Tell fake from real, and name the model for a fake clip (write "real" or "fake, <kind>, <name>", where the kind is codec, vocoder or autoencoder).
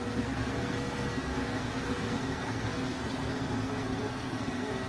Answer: fake, codec, SNAC